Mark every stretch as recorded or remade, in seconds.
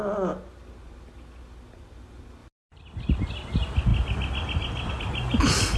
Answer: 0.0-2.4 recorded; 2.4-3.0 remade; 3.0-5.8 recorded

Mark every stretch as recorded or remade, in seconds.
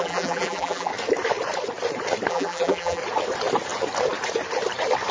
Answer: 0.0-0.9 remade; 0.9-2.3 recorded; 2.3-3.0 remade; 3.0-5.1 recorded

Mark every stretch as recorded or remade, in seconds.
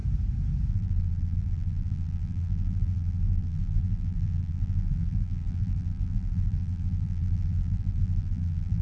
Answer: 0.0-0.7 recorded; 0.7-8.8 remade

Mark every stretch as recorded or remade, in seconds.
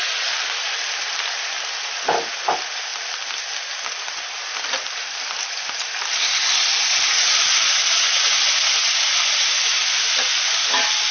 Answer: 0.0-2.9 recorded; 2.9-3.6 remade; 3.6-4.4 recorded; 4.4-7.8 remade; 7.8-8.8 recorded; 8.8-9.7 remade; 9.7-10.3 recorded; 10.3-11.1 remade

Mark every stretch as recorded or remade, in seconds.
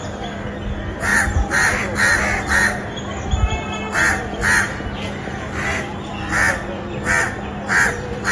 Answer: 0.0-1.1 recorded; 1.1-1.8 remade; 1.8-8.3 recorded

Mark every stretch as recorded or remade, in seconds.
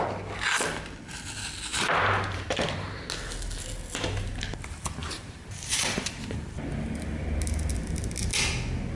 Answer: 0.0-1.7 recorded; 1.7-3.1 remade; 3.1-5.0 recorded; 5.0-6.5 remade; 6.5-9.0 recorded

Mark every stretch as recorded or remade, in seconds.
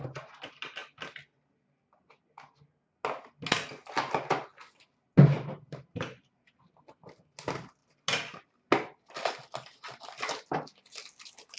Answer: 0.0-11.6 recorded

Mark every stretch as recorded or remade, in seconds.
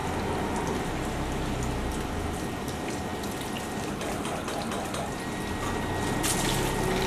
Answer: 0.0-7.1 recorded